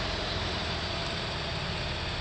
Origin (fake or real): real